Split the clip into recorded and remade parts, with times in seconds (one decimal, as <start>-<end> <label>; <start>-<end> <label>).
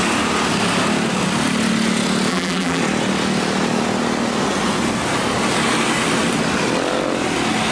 0.0-2.3 recorded; 2.3-2.8 remade; 2.8-7.7 recorded